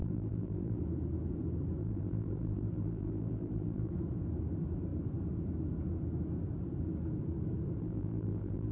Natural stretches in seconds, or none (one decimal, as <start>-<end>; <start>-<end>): 0.8-1.8; 3.9-7.8